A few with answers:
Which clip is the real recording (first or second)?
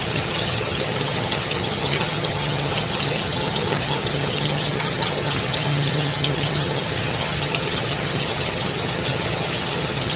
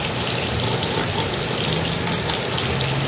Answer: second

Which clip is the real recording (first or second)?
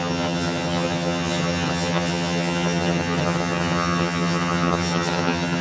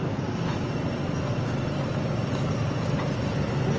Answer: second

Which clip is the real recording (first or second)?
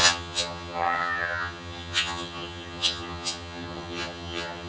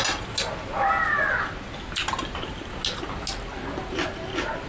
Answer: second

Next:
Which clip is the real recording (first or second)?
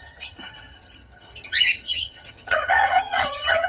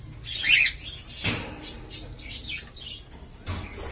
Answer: second